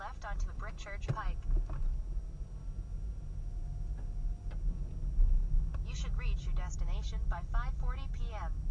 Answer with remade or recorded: recorded